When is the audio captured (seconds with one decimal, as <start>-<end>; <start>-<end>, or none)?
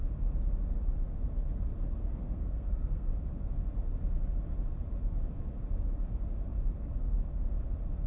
0.0-2.0; 3.1-8.1